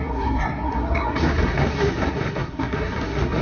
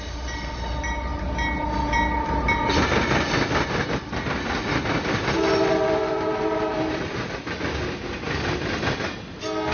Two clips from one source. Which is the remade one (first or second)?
first